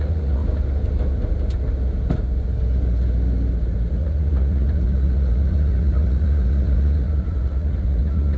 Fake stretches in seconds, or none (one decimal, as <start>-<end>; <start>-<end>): 0.0-0.4; 3.9-8.4